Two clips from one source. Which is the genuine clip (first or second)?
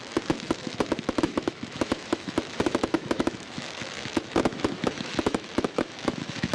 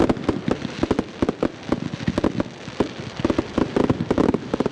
second